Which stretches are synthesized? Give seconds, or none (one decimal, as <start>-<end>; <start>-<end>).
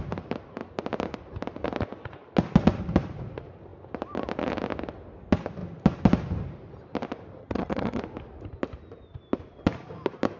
7.4-8.0